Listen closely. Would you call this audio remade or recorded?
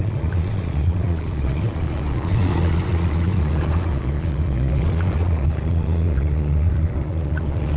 remade